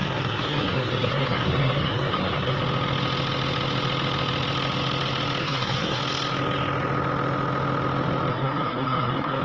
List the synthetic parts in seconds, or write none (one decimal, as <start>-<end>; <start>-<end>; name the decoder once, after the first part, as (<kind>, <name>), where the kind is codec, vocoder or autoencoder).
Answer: 0.0-2.6 (codec, SNAC); 5.4-6.0; 8.3-9.4